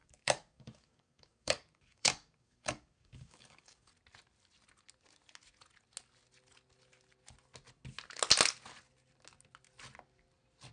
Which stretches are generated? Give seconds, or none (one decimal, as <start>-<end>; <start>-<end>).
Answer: 0.0-3.9